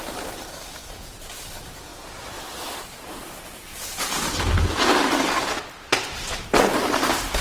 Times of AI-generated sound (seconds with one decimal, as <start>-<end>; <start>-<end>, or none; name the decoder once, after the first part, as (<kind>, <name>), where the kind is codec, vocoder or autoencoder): 0.8-1.3 (vocoder, Vocos); 3.7-4.5